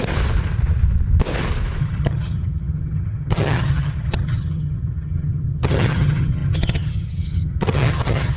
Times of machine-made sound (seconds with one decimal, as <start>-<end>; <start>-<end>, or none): 1.8-8.4